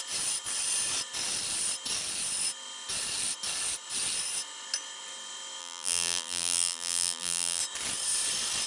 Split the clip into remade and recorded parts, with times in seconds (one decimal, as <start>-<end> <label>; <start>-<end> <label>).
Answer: 0.0-5.6 recorded; 5.6-7.6 remade; 7.6-8.7 recorded